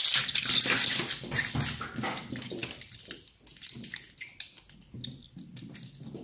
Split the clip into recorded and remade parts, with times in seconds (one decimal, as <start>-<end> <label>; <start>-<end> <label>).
0.0-6.2 recorded